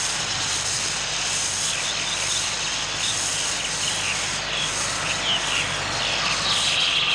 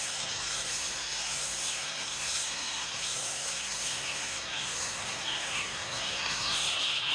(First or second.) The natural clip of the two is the first